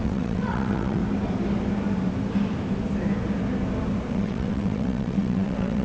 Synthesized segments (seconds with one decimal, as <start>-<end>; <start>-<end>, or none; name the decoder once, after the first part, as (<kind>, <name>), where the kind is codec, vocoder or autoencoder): 0.0-1.0 (vocoder, WaveNeXt); 4.1-5.8